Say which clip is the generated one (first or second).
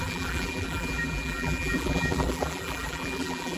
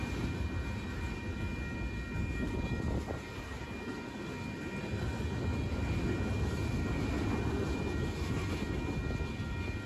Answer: first